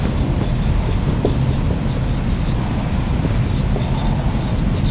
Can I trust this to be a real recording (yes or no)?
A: yes